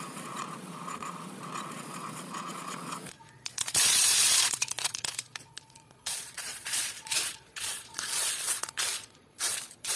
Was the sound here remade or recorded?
remade